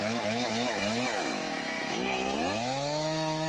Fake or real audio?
fake